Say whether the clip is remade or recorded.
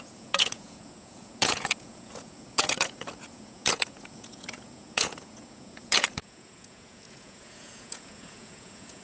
remade